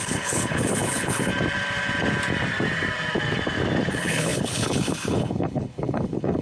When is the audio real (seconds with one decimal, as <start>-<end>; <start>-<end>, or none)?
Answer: 1.3-3.9